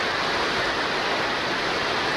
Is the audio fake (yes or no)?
no